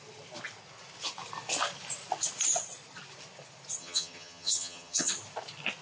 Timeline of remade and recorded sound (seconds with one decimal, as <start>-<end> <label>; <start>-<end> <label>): 0.0-3.8 recorded; 3.8-5.1 remade; 5.1-5.8 recorded